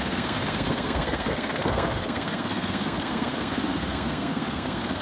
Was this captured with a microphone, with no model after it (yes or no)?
no